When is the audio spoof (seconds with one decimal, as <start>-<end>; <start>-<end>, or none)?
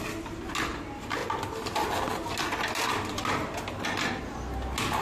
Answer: none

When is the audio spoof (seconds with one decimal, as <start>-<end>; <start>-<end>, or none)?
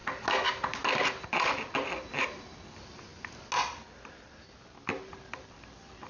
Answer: none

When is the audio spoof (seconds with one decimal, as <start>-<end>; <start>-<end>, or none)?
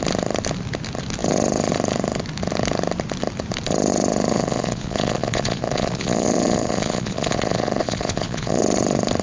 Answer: 4.3-8.6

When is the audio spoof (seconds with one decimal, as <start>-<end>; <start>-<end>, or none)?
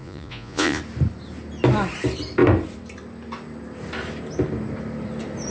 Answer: 0.0-0.8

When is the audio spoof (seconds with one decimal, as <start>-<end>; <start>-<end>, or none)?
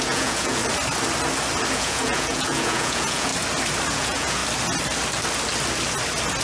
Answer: 0.0-0.6; 1.7-3.3; 3.9-4.4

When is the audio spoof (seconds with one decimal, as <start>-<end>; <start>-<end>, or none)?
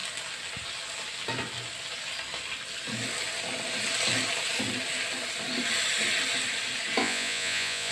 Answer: 7.0-7.9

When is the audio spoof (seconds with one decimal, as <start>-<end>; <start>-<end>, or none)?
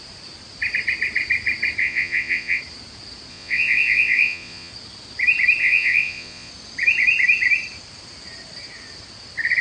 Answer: 1.8-2.6; 3.3-4.7; 5.6-6.5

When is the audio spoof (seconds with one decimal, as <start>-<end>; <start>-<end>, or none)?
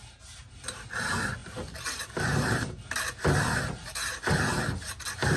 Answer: none